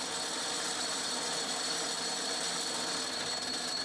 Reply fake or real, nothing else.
real